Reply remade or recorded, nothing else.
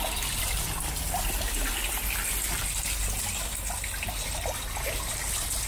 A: recorded